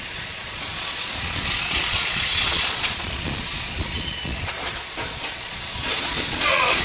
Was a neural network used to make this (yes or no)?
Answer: yes